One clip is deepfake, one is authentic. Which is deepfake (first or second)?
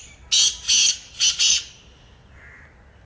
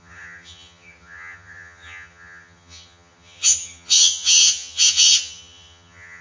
second